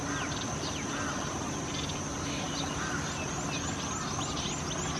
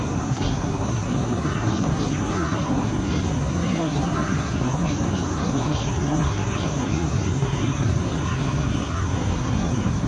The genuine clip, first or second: first